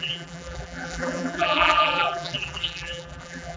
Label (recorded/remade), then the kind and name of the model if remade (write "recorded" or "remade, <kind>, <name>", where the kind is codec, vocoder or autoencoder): remade, vocoder, BigVGAN v2